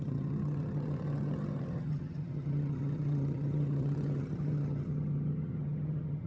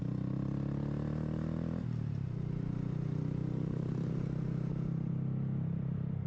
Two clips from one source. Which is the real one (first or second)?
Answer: second